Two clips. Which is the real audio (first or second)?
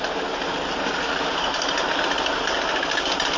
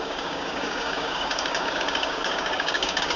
first